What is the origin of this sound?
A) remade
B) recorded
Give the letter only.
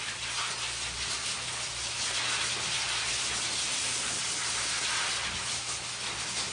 B